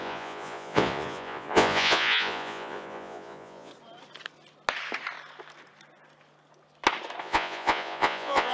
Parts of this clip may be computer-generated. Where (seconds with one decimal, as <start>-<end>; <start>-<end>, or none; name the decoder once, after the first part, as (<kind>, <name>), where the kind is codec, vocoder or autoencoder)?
0.0-3.7 (vocoder, Vocos); 7.2-8.5